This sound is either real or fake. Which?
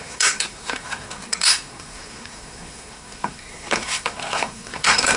fake